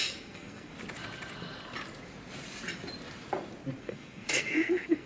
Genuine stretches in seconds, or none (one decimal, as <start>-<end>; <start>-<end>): 0.7-3.8